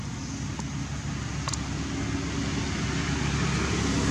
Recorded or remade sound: recorded